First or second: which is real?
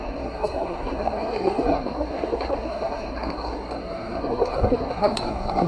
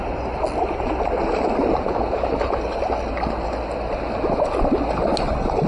second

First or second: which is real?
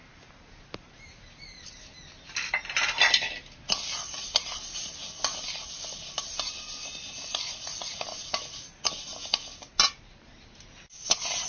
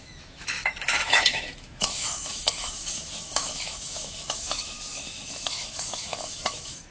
first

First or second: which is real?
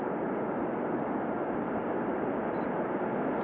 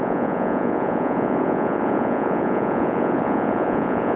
first